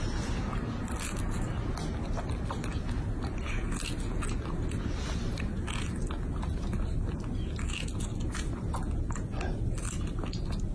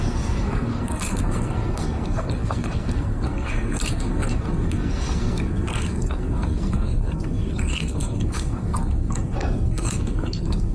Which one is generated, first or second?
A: second